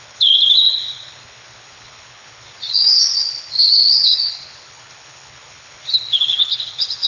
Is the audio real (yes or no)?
no